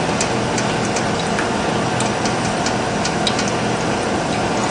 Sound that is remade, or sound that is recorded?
recorded